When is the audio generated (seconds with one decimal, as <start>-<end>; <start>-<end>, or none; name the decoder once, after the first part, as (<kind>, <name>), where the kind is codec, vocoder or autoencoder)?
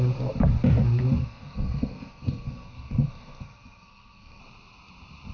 1.2-4.4 (codec, SNAC)